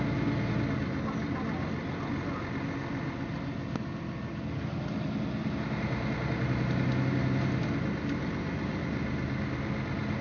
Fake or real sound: real